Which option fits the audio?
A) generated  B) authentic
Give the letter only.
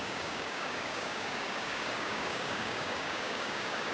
A